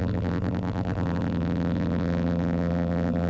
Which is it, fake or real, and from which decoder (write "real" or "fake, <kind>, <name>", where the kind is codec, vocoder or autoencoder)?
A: fake, vocoder, BigVGAN v2